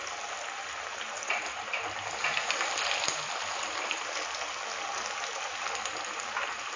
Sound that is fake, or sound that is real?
real